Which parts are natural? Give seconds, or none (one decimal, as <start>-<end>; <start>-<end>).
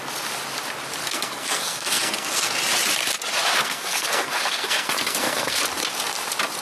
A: 0.0-1.0; 2.5-3.6; 5.6-6.6